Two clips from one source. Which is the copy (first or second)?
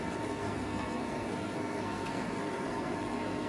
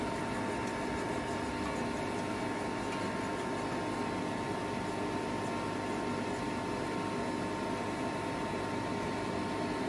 first